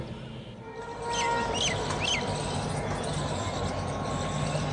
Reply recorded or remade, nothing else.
recorded